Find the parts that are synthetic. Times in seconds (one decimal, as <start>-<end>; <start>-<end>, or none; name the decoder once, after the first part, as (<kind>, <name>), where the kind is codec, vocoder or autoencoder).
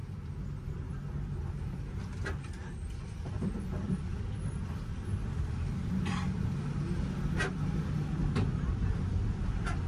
8.5-9.1 (vocoder, BigVGAN v2)